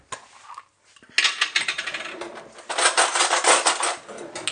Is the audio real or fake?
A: real